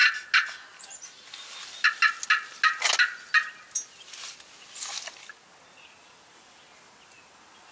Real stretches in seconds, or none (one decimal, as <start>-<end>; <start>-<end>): 0.0-7.7